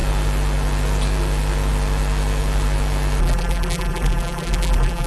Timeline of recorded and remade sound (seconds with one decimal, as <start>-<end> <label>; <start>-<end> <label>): 0.0-3.2 recorded; 3.2-5.1 remade